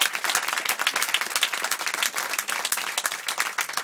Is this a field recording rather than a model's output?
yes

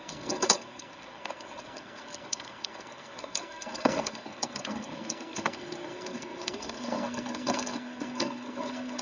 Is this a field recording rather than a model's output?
no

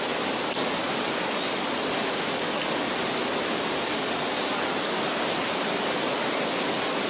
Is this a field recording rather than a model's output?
yes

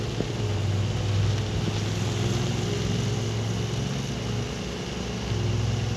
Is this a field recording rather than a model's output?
yes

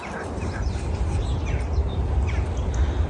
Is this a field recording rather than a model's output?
yes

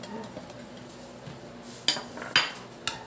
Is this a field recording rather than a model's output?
yes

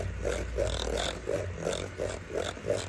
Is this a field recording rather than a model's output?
yes